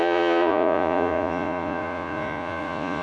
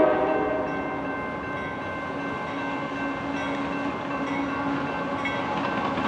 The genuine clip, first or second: second